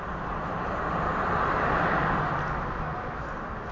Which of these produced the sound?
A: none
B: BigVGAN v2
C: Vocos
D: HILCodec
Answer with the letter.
A